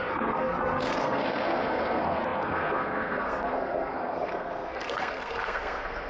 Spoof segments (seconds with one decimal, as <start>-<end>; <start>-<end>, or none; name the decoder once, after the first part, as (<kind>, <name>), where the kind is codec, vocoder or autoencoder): 0.0-6.1 (codec, SNAC)